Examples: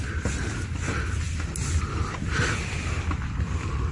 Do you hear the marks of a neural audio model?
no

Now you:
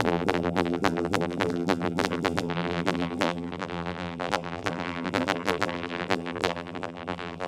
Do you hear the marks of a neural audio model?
yes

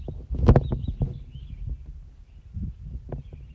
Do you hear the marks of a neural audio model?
no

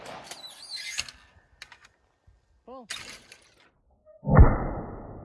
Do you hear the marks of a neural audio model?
no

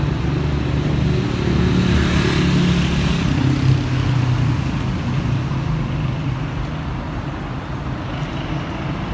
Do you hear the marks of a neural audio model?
no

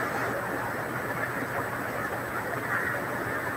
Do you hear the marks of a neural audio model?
no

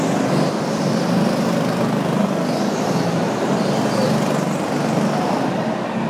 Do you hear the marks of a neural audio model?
no